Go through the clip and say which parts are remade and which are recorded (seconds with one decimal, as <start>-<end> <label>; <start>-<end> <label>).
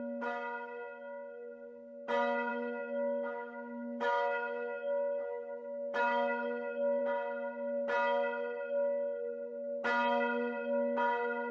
0.0-2.5 recorded; 2.5-7.0 remade; 7.0-11.5 recorded